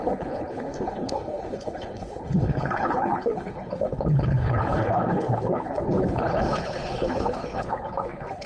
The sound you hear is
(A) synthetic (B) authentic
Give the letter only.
A